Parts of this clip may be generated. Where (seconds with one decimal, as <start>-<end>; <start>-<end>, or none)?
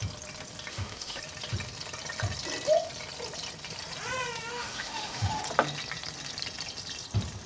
0.7-1.2; 4.5-5.4